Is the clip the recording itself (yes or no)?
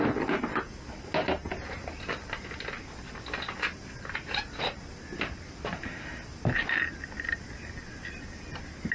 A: yes